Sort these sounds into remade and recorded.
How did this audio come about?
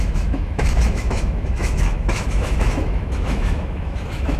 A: remade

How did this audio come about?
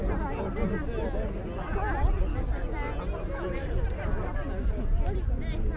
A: recorded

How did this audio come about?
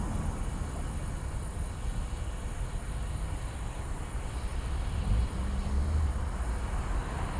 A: recorded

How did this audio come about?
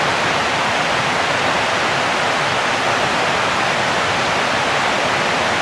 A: recorded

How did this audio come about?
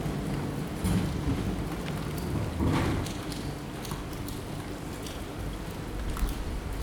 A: recorded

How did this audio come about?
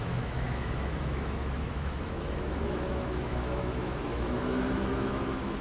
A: remade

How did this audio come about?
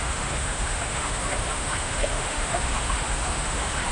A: remade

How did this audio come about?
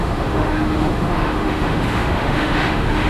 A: remade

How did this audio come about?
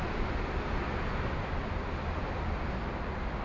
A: recorded